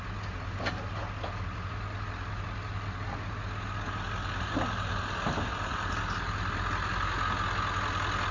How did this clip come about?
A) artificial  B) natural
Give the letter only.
B